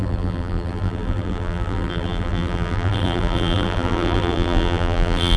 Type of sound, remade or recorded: remade